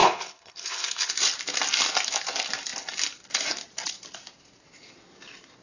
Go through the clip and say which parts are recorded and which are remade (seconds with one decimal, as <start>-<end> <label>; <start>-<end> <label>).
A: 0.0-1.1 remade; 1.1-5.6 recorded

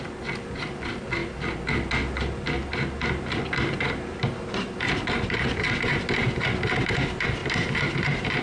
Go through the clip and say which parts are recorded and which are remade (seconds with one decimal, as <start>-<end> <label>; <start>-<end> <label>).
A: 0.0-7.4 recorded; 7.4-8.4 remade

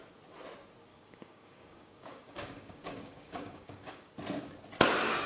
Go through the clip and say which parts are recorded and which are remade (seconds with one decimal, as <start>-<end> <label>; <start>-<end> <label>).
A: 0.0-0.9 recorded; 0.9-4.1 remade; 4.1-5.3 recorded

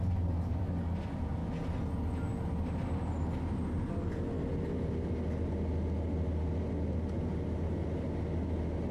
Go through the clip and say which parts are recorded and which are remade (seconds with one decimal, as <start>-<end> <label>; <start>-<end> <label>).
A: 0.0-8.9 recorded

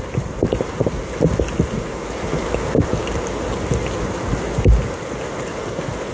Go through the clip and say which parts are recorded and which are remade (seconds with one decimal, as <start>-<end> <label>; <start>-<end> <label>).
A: 0.0-6.1 recorded

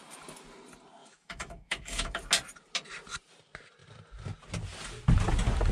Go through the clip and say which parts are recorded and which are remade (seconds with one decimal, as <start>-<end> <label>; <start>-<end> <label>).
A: 0.0-1.0 recorded; 1.0-2.2 remade; 2.2-5.7 recorded

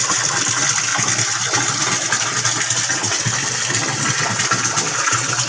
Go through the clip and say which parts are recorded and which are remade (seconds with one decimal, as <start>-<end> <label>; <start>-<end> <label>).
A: 0.0-5.5 recorded